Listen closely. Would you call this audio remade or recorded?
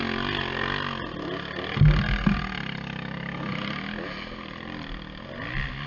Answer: recorded